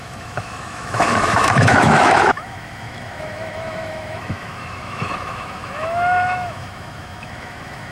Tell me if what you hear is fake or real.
fake